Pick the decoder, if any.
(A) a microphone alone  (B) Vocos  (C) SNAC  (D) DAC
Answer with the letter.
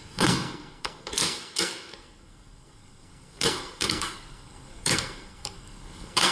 C